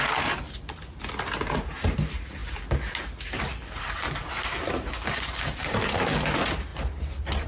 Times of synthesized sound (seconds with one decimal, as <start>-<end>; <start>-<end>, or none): none